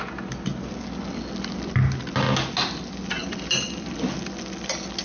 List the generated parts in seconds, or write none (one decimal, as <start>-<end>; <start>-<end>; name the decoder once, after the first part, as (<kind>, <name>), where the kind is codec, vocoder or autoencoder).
none